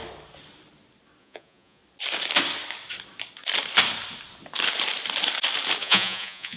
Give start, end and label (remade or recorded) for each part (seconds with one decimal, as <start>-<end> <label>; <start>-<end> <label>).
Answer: 0.0-1.2 recorded; 1.2-1.8 remade; 1.8-5.8 recorded; 5.8-6.6 remade